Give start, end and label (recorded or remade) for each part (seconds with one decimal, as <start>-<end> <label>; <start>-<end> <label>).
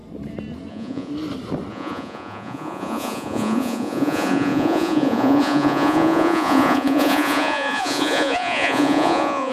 0.0-0.7 recorded; 0.7-1.1 remade; 1.1-1.7 recorded; 1.7-9.5 remade